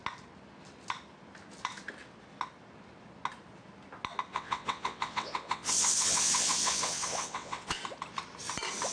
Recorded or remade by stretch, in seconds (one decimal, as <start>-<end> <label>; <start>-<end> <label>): 0.0-4.3 recorded; 4.3-7.8 remade; 7.8-8.9 recorded